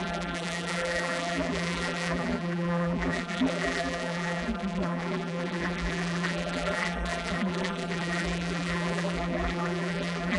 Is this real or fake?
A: fake